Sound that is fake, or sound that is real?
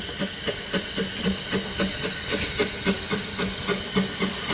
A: real